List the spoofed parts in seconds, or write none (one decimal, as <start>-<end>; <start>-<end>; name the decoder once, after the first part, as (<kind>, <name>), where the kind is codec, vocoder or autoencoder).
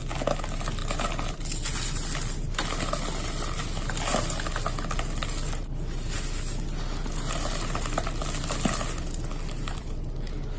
none